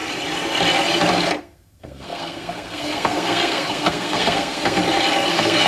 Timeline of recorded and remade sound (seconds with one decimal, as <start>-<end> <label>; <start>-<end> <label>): 0.0-1.4 recorded; 1.4-4.8 remade; 4.8-5.3 recorded; 5.3-5.7 remade